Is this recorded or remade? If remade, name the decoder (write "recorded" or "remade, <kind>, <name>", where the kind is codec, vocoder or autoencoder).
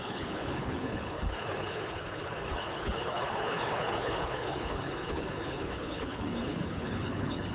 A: remade, codec, HILCodec